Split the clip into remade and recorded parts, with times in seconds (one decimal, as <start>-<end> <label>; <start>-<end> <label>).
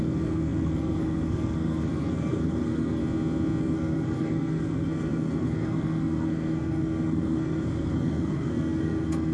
0.0-3.0 remade; 3.0-3.6 recorded; 3.6-9.3 remade